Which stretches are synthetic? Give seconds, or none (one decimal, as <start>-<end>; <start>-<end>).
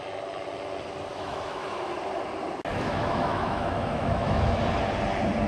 1.1-1.9; 2.7-4.6